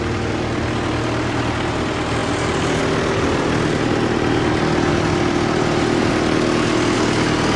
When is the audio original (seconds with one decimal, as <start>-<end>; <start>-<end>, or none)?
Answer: 0.0-4.9; 6.1-7.6